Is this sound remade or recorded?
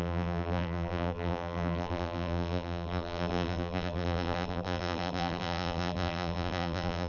remade